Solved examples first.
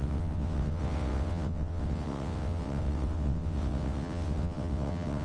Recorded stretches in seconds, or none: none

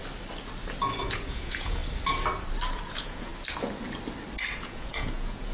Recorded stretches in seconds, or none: 0.0-1.0; 1.8-2.7; 3.3-4.6

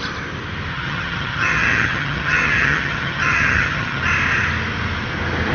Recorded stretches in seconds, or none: 0.0-0.7; 4.0-5.5

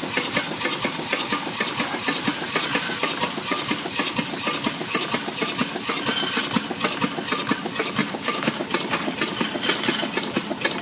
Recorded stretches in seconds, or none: 0.0-8.0; 8.5-10.8

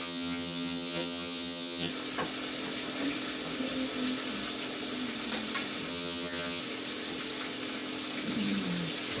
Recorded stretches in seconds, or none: 1.9-5.9; 6.6-9.2